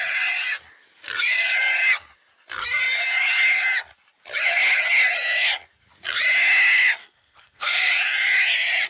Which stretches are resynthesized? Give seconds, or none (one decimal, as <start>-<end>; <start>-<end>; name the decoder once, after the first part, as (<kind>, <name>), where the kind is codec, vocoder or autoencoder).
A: 7.0-7.9 (codec, SNAC)